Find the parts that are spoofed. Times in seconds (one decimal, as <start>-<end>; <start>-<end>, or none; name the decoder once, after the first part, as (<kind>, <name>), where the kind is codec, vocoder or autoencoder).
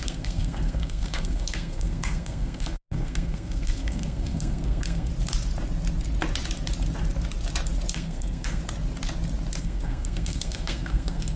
0.0-5.1 (codec, SNAC); 7.9-8.6; 9.6-11.4